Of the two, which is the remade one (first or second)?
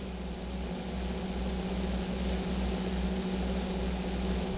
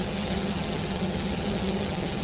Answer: second